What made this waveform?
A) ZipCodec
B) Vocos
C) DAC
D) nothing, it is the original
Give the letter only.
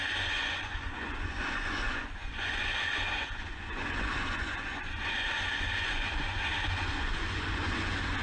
B